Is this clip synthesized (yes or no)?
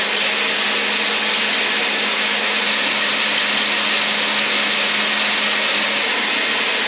no